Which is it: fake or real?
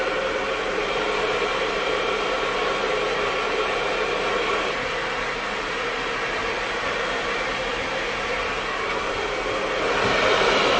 real